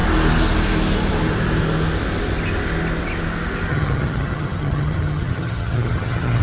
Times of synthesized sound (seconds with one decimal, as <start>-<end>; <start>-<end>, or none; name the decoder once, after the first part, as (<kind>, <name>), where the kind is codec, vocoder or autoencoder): 3.7-6.4 (vocoder, HiFi-GAN)